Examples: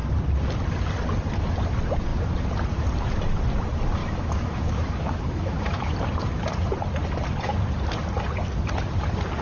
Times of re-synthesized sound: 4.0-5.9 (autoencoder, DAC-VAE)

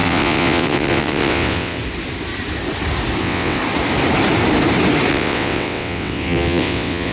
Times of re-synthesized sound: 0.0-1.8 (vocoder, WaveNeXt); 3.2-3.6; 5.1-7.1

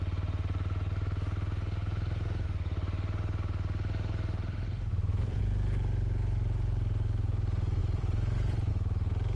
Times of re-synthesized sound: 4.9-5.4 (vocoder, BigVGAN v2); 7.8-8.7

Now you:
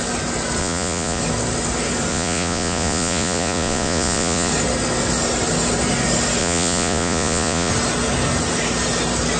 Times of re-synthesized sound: 0.6-1.2 (vocoder, Vocos); 2.1-4.5; 6.4-7.7

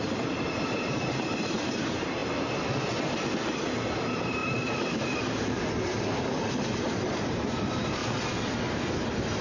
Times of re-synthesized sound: 0.0-2.2 (vocoder, BigVGAN v2); 3.6-8.0; 8.9-9.4

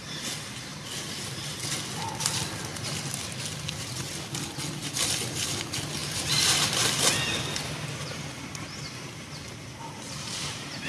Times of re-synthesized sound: none

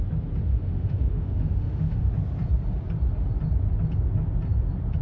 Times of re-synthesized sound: 0.5-2.1 (autoencoder, DAC-VAE)

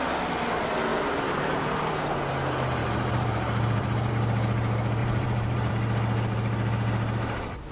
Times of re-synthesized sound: 0.9-1.9 (vocoder, BigVGAN v2); 2.8-4.1; 5.0-5.7